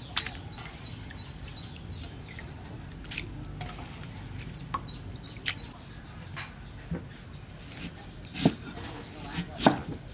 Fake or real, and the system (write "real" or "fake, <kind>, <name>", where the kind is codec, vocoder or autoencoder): real